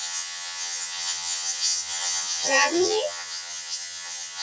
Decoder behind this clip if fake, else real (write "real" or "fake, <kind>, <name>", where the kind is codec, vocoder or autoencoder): fake, vocoder, HiFi-GAN